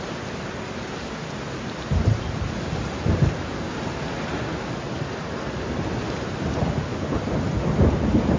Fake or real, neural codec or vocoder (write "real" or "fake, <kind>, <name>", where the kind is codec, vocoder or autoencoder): real